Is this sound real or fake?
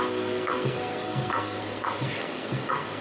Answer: fake